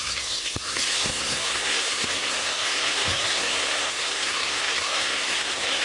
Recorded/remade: remade